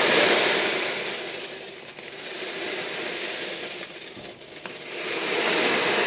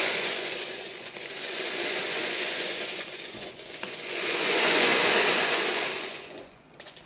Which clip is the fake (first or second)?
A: second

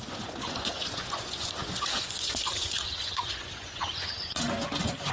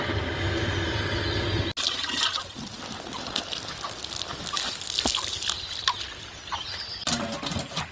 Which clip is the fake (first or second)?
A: first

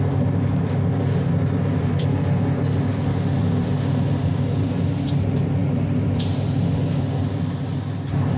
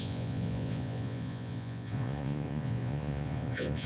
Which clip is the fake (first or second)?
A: second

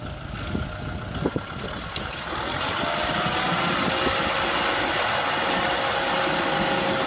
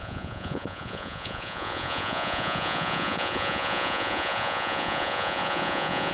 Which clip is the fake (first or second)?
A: second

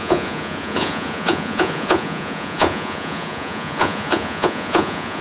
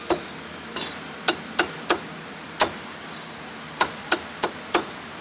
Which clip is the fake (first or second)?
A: first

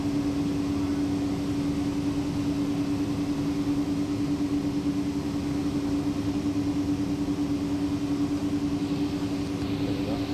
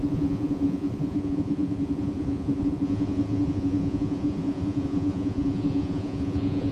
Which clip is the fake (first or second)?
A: second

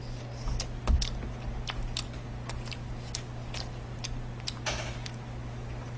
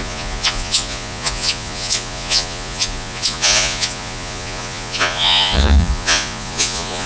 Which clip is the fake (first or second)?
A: second